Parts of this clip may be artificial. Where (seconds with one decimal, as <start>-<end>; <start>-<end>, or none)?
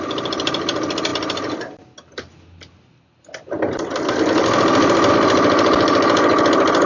none